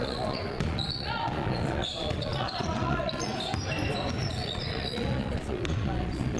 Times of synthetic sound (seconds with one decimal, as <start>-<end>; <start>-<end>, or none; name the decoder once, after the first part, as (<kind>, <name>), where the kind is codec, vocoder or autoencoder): 0.0-3.3 (vocoder, Vocos); 4.2-6.4